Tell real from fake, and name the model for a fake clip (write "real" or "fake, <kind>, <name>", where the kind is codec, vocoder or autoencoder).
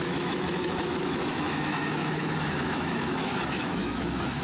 fake, autoencoder, DAC-VAE